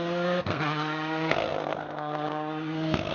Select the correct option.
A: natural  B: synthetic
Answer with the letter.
B